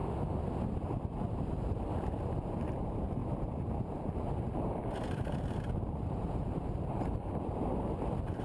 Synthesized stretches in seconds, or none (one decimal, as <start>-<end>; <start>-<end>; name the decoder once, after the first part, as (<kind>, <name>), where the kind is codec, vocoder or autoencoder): 0.7-8.4 (vocoder, BigVGAN v2)